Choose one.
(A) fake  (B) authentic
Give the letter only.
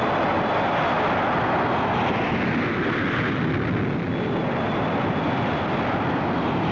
B